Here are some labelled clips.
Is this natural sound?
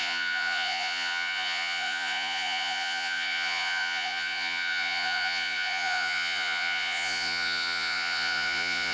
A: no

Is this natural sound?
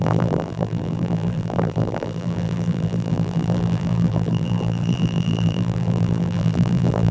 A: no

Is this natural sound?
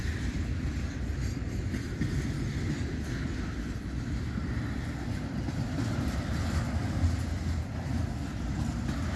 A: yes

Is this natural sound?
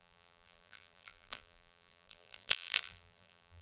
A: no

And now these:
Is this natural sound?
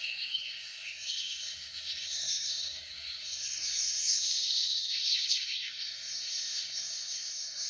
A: no